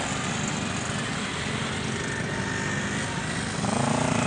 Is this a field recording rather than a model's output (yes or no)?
yes